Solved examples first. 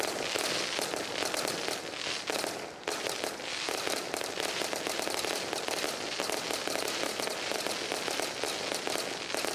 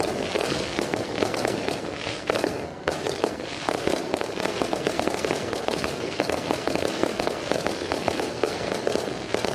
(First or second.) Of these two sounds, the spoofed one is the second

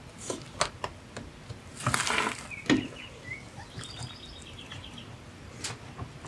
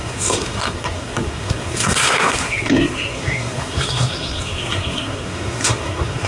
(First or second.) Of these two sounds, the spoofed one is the second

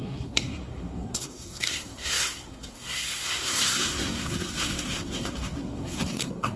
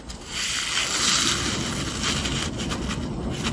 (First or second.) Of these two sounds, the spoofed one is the first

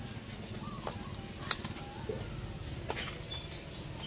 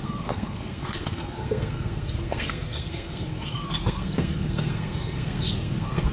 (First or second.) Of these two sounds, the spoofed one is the second